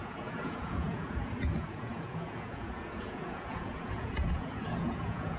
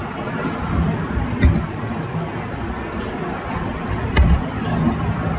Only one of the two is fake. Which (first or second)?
first